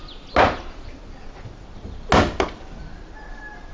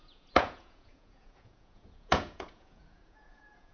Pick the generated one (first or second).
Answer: second